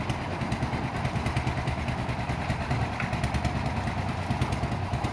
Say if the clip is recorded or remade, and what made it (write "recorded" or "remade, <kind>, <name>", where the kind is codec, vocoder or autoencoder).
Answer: recorded